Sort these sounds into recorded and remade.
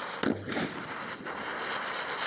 recorded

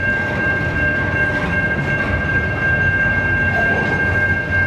recorded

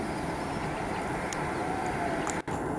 recorded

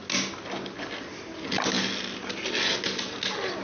recorded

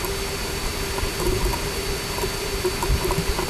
recorded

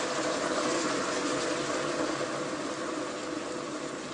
recorded